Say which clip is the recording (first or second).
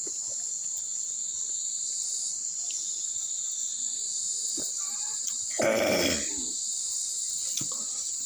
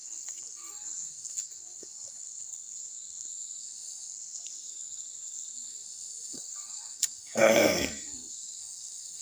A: first